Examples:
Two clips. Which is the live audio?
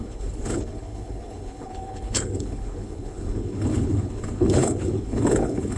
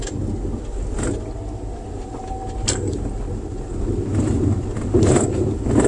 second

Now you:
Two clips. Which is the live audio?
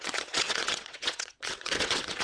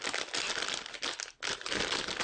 second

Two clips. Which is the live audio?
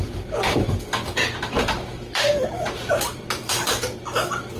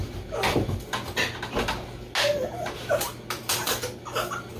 second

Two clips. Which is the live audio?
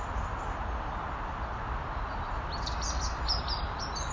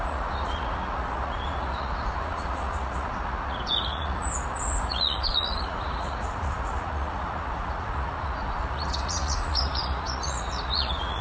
first